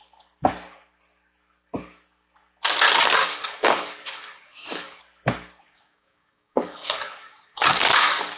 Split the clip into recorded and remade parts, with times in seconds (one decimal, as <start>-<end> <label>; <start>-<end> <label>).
0.0-3.2 recorded; 3.2-5.0 remade; 5.0-5.6 recorded; 5.6-8.4 remade

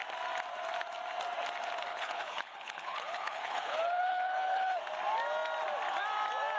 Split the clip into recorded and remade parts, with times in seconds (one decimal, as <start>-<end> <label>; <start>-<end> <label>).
0.0-1.9 recorded; 1.9-4.8 remade; 4.8-6.6 recorded

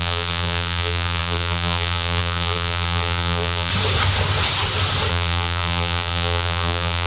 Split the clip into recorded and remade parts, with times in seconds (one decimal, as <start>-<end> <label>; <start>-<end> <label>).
0.0-3.7 remade; 3.7-5.1 recorded; 5.1-7.1 remade